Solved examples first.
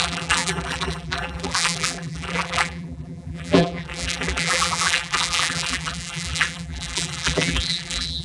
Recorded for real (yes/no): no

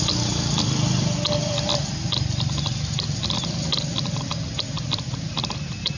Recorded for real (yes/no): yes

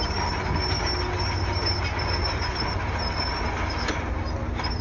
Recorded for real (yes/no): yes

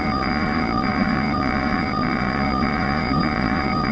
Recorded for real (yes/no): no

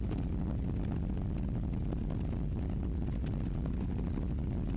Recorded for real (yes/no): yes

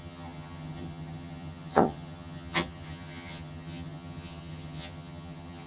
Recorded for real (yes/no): no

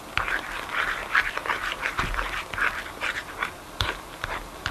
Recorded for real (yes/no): no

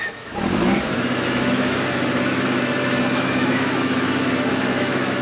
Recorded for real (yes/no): no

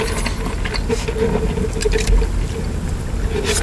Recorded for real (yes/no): yes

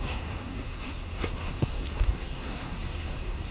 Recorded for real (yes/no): no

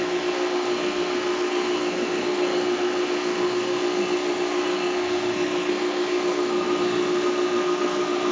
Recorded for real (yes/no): no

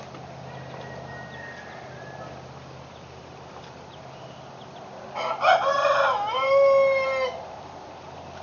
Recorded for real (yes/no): yes